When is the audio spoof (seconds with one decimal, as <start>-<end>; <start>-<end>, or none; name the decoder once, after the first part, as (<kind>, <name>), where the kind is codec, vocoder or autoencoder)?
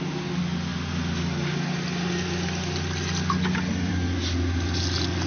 none